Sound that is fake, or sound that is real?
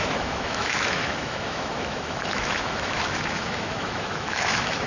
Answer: fake